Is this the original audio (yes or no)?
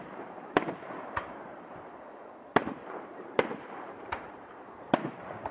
no